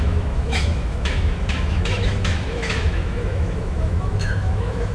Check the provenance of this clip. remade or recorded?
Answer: remade